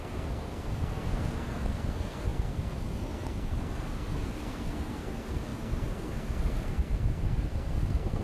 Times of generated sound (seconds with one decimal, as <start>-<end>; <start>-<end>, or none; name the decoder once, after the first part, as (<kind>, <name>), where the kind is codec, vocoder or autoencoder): 0.0-8.2 (codec, SNAC)